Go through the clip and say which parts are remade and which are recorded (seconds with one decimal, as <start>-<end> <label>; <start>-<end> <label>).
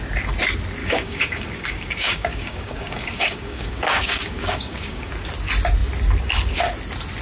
0.0-0.8 recorded; 0.8-5.1 remade; 5.1-7.2 recorded